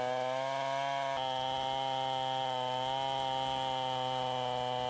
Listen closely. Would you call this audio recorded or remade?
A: recorded